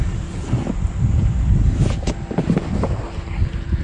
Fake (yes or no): no